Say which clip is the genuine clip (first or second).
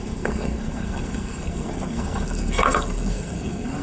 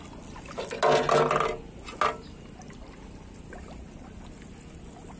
second